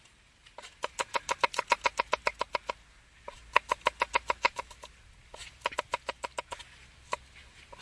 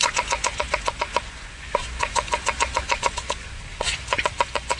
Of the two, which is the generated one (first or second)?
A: second